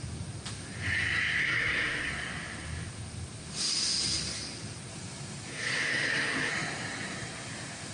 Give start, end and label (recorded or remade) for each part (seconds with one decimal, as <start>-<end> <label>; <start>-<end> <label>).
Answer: 0.0-1.4 recorded; 1.4-2.1 remade; 2.1-5.5 recorded; 5.5-6.5 remade; 6.5-7.9 recorded